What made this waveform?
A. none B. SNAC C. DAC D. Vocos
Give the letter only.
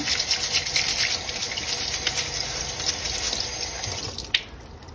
A